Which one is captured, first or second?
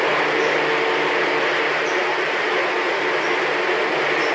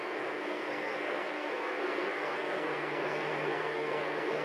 first